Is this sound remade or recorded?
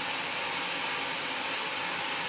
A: recorded